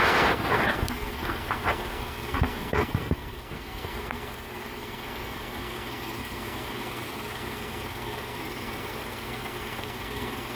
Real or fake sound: fake